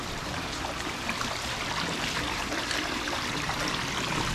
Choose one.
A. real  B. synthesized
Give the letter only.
B